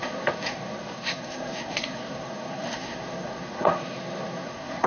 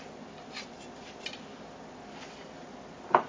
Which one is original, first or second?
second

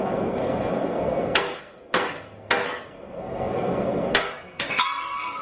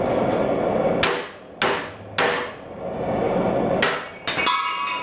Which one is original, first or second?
second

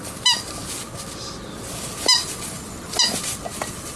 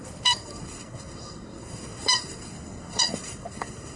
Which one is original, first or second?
first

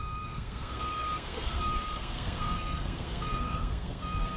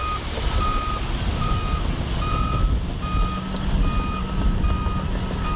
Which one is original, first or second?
second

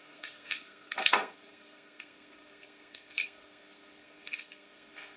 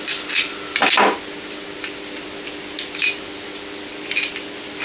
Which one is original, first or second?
second